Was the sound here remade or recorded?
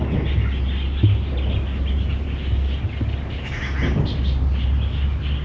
recorded